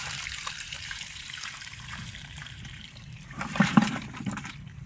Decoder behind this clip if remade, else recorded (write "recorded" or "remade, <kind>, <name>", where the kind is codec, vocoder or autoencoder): remade, vocoder, BigVGAN v2